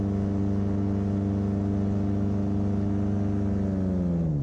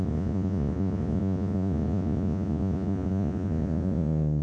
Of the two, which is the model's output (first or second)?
second